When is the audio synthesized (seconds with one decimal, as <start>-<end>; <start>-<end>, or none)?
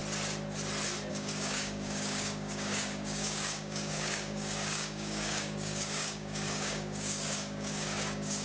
1.1-8.4